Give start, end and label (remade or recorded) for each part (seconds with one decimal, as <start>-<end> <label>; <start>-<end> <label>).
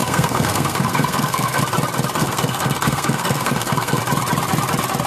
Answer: 0.0-1.6 remade; 1.6-2.2 recorded; 2.2-4.0 remade; 4.0-5.1 recorded